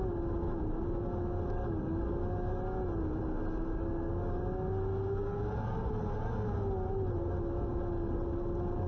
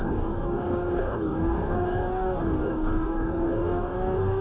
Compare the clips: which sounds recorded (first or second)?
first